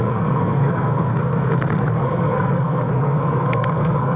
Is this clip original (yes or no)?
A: no